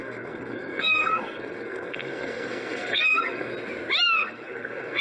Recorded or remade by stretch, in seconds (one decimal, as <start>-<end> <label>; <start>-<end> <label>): 0.0-3.5 remade; 3.5-4.1 recorded; 4.1-5.0 remade